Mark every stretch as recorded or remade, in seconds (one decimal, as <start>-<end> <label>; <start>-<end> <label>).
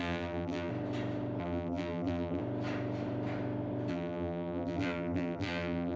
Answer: 0.0-0.7 remade; 0.7-1.4 recorded; 1.4-2.4 remade; 2.4-3.9 recorded; 3.9-6.0 remade